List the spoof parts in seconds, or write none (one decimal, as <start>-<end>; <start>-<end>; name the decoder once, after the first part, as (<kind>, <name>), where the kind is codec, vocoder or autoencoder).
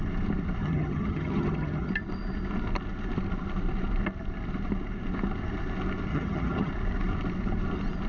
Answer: 0.6-1.9 (vocoder, HiFi-GAN); 6.1-6.7